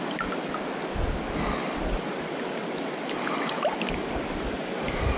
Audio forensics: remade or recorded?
recorded